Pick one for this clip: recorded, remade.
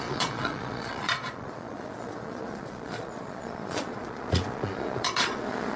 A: remade